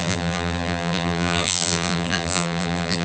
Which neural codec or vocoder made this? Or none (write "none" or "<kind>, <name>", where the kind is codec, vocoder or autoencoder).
vocoder, BigVGAN v2